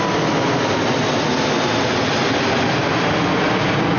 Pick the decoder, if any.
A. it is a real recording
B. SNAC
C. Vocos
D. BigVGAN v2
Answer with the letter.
A